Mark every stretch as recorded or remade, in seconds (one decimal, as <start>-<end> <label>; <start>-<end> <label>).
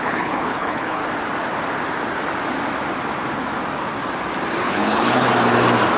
0.0-1.0 remade; 1.0-4.6 recorded; 4.6-5.3 remade; 5.3-6.0 recorded